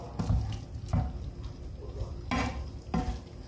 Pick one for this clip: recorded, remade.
recorded